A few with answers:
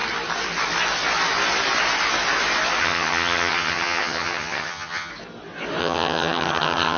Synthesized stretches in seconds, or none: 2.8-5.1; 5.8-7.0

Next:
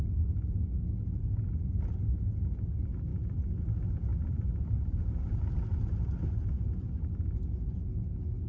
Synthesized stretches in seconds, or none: 4.1-6.2

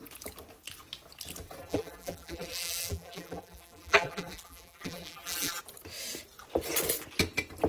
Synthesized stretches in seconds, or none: 1.6-5.6

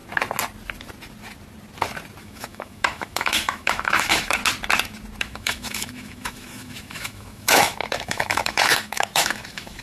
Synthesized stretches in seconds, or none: 2.2-4.4; 5.2-9.8

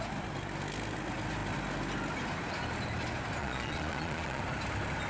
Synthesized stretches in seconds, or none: 3.4-4.4